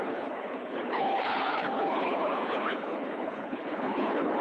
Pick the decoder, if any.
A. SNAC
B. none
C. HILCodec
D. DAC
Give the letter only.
C